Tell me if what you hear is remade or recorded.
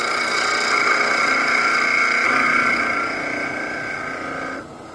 recorded